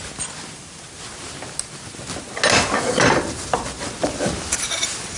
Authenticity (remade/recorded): recorded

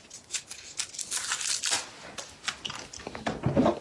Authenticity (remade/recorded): recorded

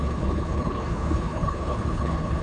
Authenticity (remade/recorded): remade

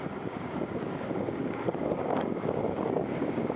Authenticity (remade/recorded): remade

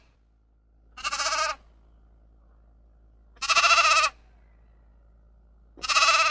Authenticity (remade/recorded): recorded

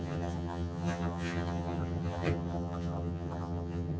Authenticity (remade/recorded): remade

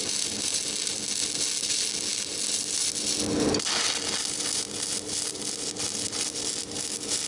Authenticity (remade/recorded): recorded